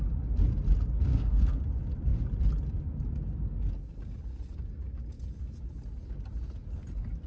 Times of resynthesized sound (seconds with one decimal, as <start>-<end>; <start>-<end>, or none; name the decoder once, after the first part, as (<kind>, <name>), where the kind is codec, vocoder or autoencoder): 1.1-1.6 (codec, SNAC)